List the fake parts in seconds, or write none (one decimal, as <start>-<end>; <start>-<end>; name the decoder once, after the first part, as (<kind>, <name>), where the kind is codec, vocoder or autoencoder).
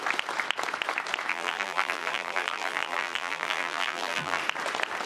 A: 1.3-4.4 (vocoder, BigVGAN v2)